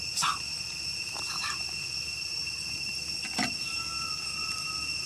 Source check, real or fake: real